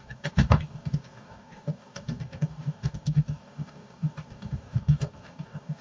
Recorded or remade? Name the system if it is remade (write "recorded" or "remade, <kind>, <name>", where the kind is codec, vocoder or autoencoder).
remade, codec, DAC